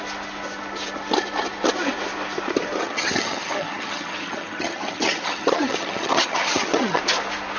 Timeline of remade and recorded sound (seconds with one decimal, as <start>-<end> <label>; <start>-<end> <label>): 0.0-2.8 recorded; 2.8-7.0 remade; 7.0-7.6 recorded